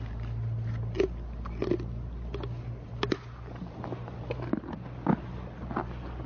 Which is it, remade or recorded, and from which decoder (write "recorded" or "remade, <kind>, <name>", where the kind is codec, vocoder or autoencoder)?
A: recorded